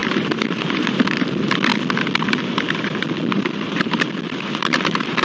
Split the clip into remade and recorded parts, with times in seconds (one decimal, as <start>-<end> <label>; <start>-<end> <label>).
0.0-1.7 remade; 1.7-3.3 recorded; 3.3-5.2 remade